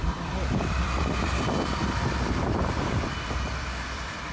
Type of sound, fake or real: fake